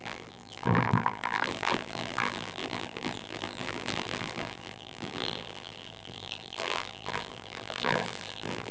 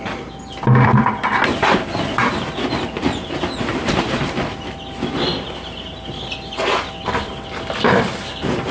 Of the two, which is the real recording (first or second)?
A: second